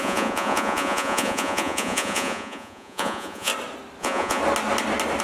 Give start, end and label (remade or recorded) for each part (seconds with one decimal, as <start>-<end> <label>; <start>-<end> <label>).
0.0-3.5 remade; 3.5-4.0 recorded; 4.0-4.4 remade; 4.4-5.2 recorded